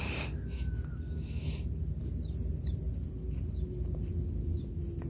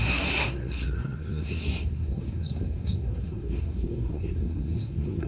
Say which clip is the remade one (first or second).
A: second